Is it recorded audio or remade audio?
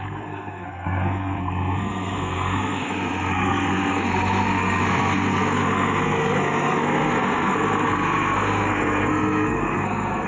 remade